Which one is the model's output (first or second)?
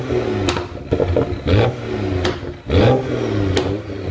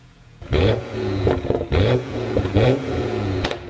second